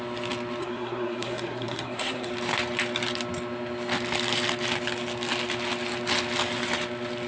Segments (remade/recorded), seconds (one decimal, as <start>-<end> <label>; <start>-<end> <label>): 0.0-0.6 recorded; 0.6-2.3 remade; 2.3-7.3 recorded